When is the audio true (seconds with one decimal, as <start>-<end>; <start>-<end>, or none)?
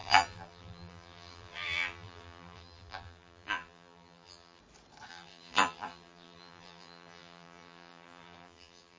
4.6-5.1